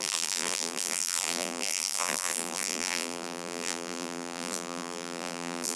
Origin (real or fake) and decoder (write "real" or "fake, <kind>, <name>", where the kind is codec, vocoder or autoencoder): fake, vocoder, BigVGAN v2